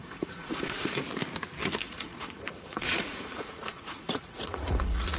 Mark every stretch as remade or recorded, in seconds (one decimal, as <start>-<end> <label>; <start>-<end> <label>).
0.0-1.0 remade; 1.0-1.8 recorded; 1.8-5.2 remade